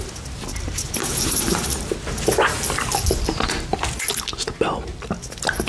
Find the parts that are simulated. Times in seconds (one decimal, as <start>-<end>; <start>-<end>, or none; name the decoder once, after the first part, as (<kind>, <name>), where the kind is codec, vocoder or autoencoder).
none